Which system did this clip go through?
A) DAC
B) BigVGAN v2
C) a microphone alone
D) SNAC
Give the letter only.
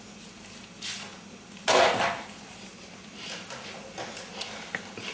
C